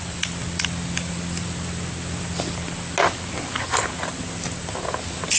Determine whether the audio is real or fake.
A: real